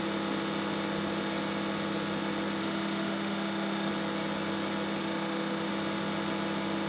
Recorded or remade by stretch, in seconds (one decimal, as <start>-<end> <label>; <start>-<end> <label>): 0.0-2.6 recorded; 2.6-3.9 remade; 3.9-5.0 recorded; 5.0-5.7 remade; 5.7-6.9 recorded

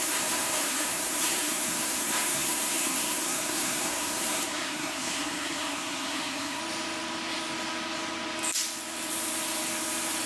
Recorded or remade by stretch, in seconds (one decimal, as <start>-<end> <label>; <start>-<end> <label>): 0.0-6.6 remade; 6.6-10.3 recorded

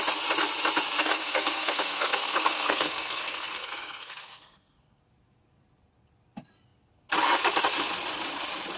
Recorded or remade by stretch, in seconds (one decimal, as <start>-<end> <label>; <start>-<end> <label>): 0.0-1.0 recorded; 1.0-5.0 remade; 5.0-8.8 recorded

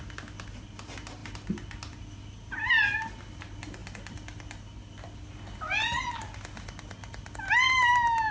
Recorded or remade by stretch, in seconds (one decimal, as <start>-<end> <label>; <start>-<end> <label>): 0.0-8.3 recorded

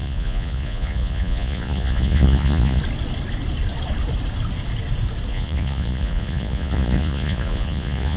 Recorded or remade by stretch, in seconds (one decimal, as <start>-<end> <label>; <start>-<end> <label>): 0.0-2.8 remade; 2.8-5.3 recorded; 5.3-8.2 remade